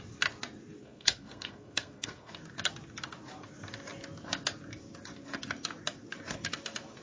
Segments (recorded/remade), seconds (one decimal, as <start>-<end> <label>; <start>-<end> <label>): 0.0-0.8 recorded; 0.8-2.3 remade; 2.3-7.0 recorded